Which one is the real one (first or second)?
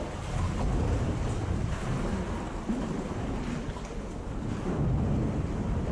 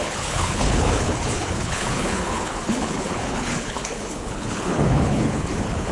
first